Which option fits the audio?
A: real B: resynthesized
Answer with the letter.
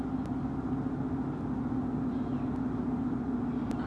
A